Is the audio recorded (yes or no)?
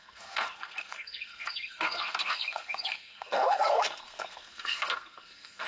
no